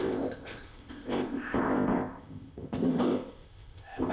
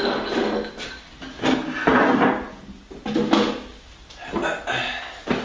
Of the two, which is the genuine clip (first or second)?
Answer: second